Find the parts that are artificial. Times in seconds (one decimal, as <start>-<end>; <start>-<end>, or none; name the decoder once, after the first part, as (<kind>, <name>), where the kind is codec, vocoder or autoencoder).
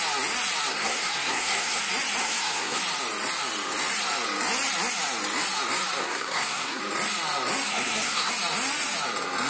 0.7-1.8 (codec, SNAC); 2.2-2.8; 6.0-6.8; 7.7-8.3